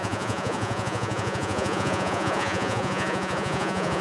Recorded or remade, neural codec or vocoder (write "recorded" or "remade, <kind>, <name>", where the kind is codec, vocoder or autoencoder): remade, vocoder, Vocos